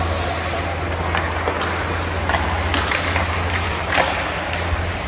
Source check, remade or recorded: recorded